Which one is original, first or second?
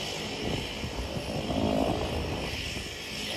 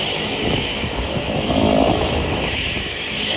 first